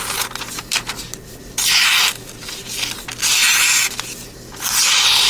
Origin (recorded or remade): recorded